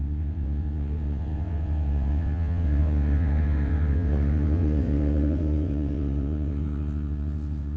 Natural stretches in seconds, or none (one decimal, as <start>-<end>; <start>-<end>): none